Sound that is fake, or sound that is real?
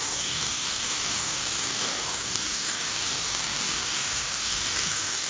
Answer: fake